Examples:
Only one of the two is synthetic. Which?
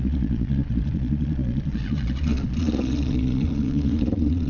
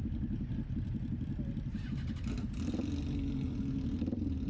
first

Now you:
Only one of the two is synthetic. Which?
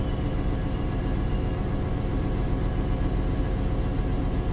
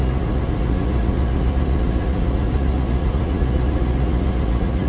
second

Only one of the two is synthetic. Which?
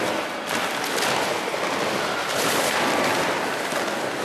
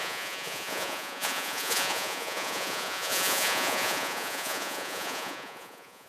second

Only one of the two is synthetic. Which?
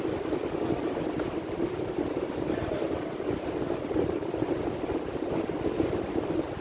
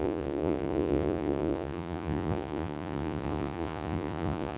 second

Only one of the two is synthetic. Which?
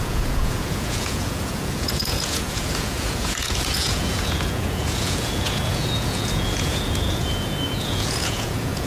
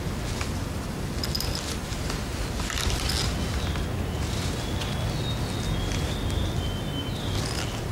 first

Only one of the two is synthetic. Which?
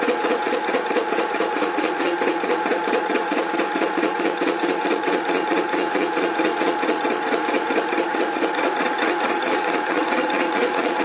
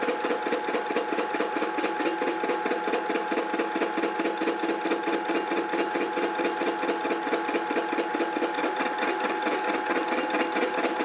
first